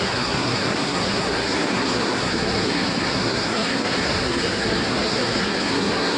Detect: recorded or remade remade